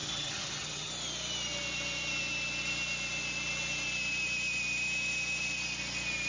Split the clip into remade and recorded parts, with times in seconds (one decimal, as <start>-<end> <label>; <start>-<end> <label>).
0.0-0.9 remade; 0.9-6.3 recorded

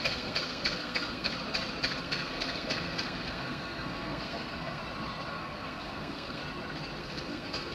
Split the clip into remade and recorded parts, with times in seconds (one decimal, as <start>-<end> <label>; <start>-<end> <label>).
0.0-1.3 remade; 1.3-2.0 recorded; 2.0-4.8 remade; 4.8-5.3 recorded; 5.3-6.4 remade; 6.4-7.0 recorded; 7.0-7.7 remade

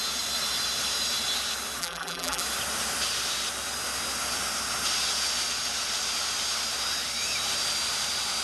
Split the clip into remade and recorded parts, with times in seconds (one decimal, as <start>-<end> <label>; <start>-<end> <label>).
0.0-1.8 recorded; 1.8-2.4 remade; 2.4-8.4 recorded

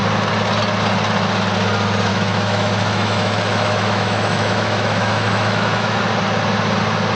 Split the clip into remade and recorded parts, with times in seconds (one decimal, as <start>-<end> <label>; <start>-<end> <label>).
0.0-2.1 recorded; 2.1-6.0 remade; 6.0-7.1 recorded

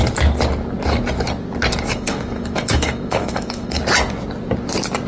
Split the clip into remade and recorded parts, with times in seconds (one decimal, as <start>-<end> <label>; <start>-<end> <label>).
0.0-1.9 recorded; 1.9-3.8 remade; 3.8-5.1 recorded

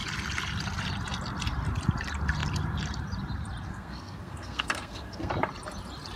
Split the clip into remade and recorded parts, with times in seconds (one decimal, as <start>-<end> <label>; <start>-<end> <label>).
0.0-3.7 recorded; 3.7-5.3 remade; 5.3-6.2 recorded

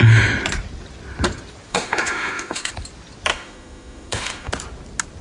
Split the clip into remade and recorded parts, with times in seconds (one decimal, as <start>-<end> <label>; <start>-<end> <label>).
0.0-1.7 recorded; 1.7-2.7 remade; 2.7-3.3 recorded; 3.3-4.5 remade; 4.5-5.2 recorded